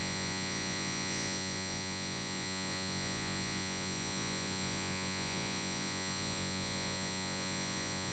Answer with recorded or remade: remade